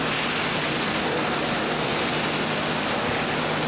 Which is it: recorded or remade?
recorded